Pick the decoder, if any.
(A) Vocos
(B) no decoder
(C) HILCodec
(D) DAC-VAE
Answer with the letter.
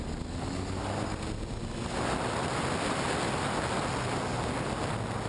B